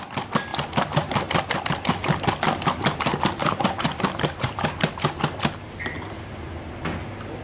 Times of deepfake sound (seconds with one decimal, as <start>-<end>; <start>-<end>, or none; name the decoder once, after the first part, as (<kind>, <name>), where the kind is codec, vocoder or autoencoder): 3.4-5.2 (vocoder, BigVGAN v2)